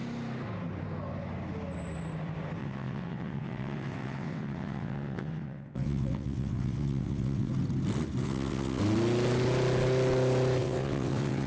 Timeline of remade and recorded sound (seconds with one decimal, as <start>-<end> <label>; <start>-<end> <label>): 0.0-2.6 recorded; 2.6-7.5 remade; 7.5-8.2 recorded; 8.2-8.8 remade; 8.8-10.6 recorded; 10.6-11.5 remade